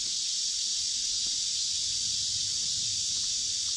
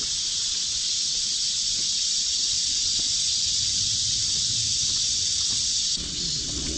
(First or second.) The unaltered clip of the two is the first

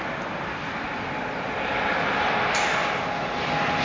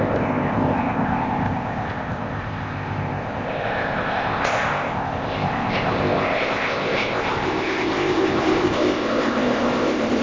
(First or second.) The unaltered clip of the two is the first